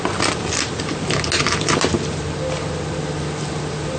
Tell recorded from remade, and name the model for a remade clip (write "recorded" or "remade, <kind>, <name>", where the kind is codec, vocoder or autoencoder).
recorded